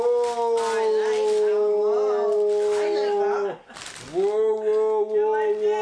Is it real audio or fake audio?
real